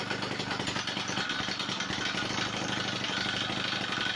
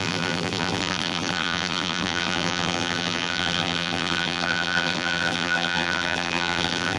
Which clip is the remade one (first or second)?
second